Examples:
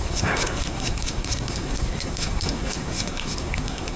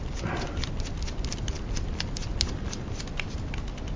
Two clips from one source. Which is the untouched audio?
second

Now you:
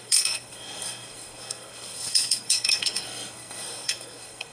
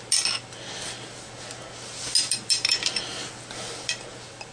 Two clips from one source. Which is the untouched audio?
second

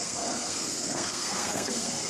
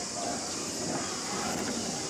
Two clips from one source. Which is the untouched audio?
second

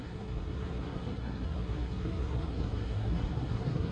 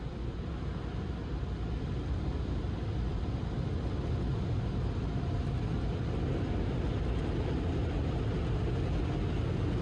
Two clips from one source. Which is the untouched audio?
second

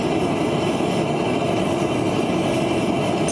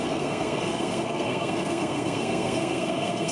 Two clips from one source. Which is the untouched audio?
first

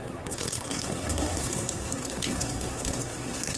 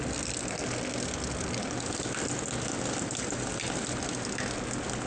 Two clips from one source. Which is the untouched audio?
second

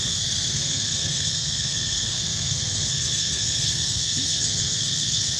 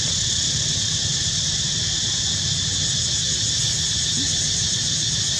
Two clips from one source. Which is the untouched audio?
second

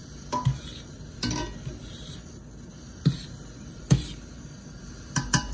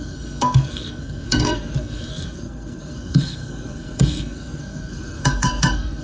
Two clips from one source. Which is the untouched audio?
first